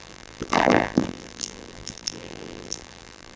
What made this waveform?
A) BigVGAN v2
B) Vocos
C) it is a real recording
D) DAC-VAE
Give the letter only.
A